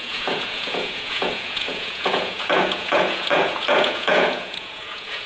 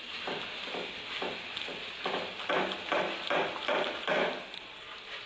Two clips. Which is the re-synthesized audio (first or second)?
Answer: first